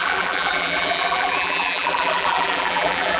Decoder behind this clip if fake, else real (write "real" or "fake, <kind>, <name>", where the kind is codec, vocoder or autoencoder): fake, vocoder, BigVGAN v2